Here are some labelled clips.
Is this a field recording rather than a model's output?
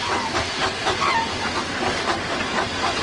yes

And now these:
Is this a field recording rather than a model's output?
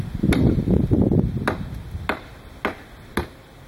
yes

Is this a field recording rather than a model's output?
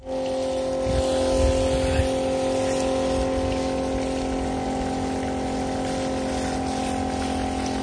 yes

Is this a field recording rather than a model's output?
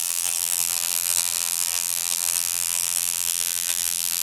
no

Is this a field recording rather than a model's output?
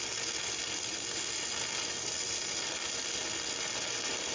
no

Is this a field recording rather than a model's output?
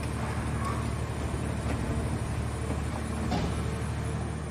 yes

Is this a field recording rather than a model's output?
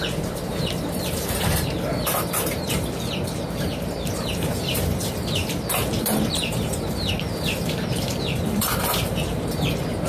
no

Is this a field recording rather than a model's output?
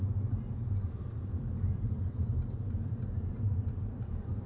no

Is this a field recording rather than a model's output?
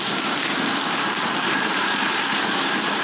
no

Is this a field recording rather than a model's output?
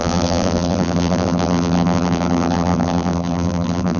no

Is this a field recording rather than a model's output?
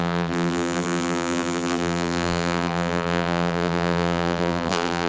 no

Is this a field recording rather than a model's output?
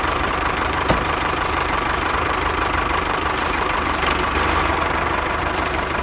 no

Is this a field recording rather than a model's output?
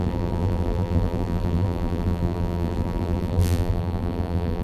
no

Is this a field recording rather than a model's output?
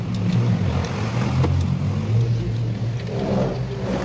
yes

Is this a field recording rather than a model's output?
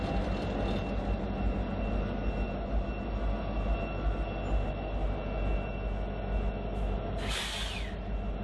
yes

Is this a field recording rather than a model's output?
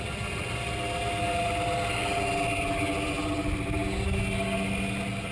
yes